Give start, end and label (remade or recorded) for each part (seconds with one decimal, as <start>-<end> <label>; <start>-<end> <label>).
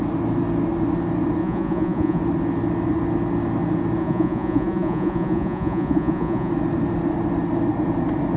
0.0-1.4 recorded; 1.4-2.2 remade; 2.2-4.0 recorded; 4.0-6.5 remade; 6.5-8.4 recorded